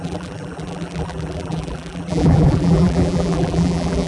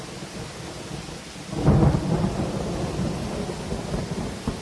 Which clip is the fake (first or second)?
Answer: first